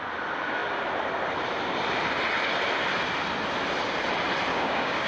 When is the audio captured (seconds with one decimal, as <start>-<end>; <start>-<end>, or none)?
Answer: 0.0-4.5